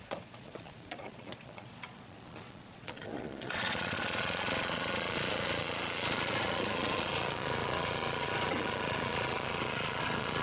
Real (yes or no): no